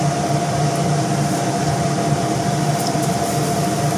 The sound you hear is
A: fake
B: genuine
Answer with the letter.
B